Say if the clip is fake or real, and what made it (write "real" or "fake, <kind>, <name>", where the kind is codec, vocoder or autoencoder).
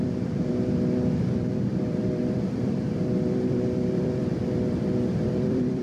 fake, vocoder, BigVGAN v2